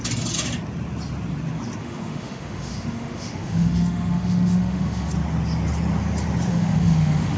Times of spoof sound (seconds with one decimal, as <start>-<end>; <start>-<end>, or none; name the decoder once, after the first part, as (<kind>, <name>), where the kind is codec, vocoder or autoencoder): 1.8-5.1 (autoencoder, DAC-VAE); 6.5-7.4